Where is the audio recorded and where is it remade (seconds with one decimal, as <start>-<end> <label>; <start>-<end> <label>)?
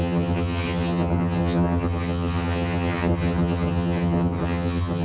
0.0-5.0 remade